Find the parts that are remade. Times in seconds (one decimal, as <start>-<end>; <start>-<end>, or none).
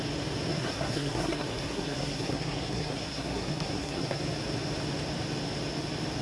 0.5-4.2